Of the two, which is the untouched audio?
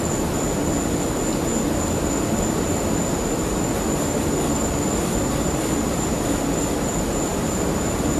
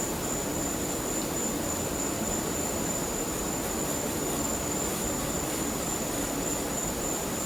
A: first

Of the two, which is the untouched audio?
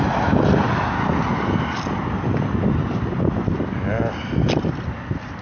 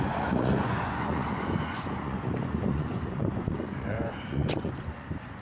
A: first